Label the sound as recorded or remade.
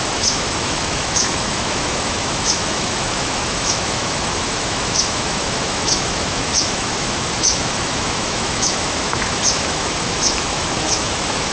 remade